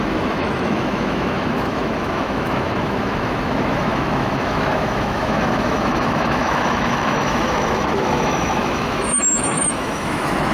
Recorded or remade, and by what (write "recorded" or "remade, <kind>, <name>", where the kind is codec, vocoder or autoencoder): remade, autoencoder, DAC-VAE